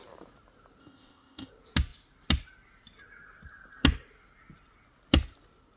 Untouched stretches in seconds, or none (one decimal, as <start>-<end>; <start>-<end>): 0.0-0.8; 1.5-5.8